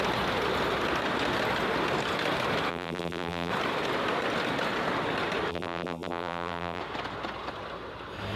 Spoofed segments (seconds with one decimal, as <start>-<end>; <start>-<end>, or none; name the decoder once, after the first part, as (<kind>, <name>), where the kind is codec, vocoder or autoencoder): 2.7-3.5 (vocoder, BigVGAN v2); 5.5-6.8